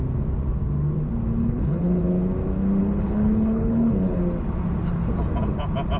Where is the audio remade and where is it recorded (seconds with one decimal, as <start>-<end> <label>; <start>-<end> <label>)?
0.0-1.4 recorded; 1.4-2.0 remade; 2.0-2.8 recorded; 2.8-4.2 remade; 4.2-6.0 recorded